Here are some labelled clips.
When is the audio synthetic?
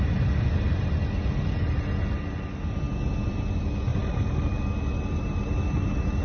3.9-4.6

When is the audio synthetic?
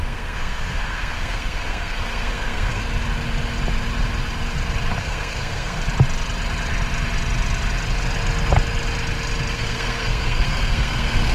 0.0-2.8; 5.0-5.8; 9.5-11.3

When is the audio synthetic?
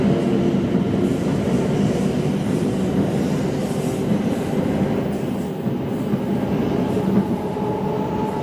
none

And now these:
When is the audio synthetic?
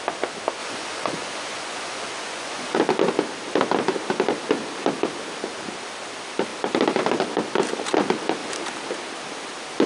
0.6-2.8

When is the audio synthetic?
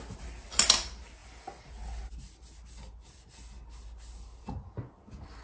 none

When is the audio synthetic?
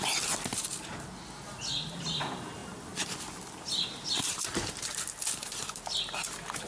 none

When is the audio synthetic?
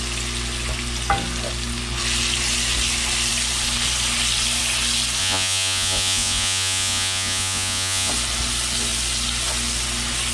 5.2-8.1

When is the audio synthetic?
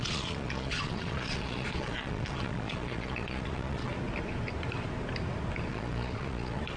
0.0-3.9; 5.7-6.8